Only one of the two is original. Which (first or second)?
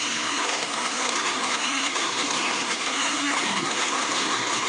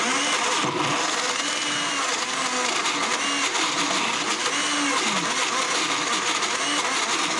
second